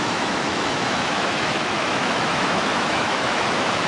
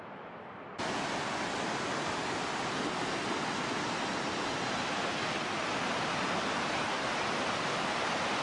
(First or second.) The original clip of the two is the second